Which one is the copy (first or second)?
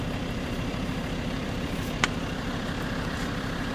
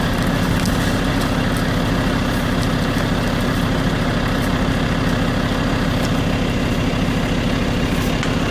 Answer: first